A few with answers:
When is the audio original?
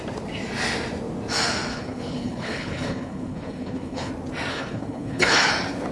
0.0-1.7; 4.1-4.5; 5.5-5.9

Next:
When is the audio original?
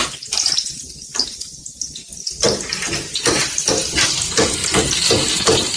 0.0-5.8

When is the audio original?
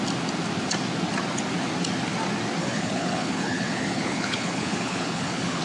0.0-2.6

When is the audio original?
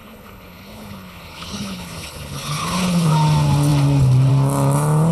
3.1-5.1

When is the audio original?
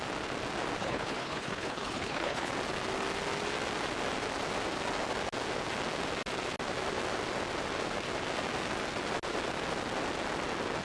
0.0-0.8; 2.5-10.8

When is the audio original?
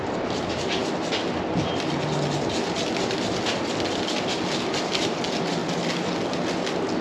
0.0-7.0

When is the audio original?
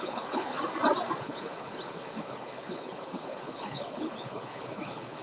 0.5-1.2